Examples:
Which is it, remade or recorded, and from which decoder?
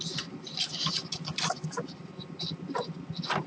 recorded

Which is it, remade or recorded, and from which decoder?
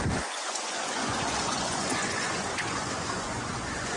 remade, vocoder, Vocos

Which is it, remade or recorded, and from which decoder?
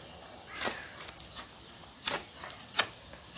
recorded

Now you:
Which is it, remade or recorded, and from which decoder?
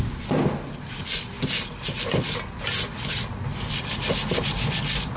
recorded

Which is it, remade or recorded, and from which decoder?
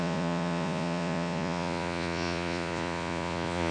remade, vocoder, Vocos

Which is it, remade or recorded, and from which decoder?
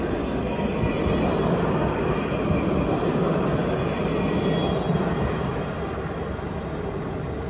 recorded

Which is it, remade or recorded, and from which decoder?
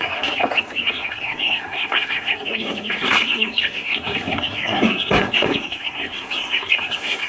remade, codec, SNAC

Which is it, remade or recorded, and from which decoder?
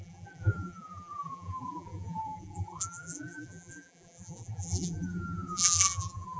remade, vocoder, BigVGAN v2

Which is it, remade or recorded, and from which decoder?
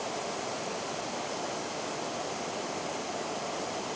recorded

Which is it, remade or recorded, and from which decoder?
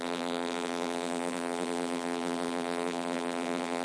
remade, vocoder, BigVGAN v2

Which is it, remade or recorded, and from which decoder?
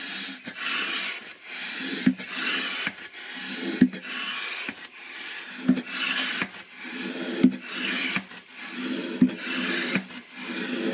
recorded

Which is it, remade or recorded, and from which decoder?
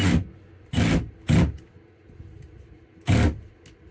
recorded